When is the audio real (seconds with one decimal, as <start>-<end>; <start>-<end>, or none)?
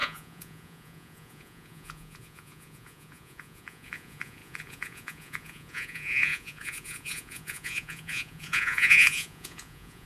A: none